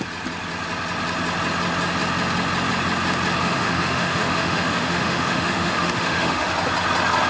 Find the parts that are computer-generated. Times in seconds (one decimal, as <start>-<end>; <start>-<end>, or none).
3.4-6.5